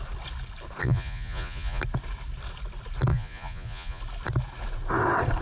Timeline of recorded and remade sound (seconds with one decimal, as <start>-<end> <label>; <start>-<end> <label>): 0.0-0.8 recorded; 0.8-1.8 remade; 1.8-3.1 recorded; 3.1-4.0 remade; 4.0-5.4 recorded